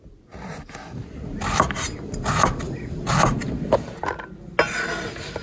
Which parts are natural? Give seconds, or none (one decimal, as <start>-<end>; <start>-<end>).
0.0-5.4